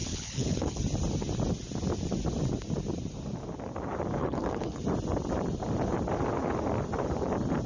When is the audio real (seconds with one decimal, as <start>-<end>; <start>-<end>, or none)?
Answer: 0.8-4.2; 4.8-7.7